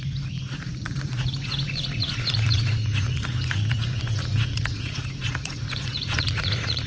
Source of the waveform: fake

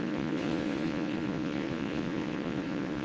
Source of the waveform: fake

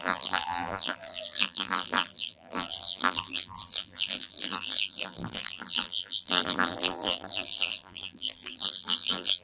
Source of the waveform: fake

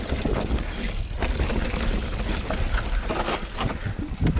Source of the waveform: real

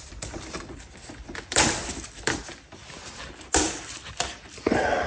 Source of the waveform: fake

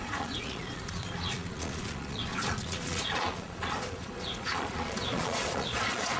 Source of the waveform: fake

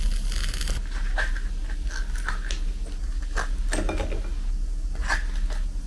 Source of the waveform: real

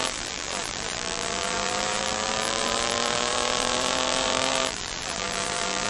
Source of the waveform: fake